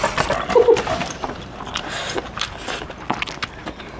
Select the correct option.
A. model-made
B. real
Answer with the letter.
B